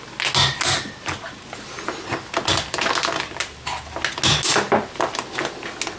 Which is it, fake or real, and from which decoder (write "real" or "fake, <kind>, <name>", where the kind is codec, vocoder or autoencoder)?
real